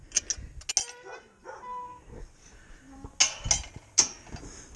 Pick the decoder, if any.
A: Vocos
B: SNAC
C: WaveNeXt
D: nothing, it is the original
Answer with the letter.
D